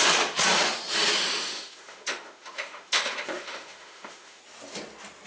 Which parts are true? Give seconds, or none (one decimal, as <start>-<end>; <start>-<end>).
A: 0.0-1.2; 4.4-5.3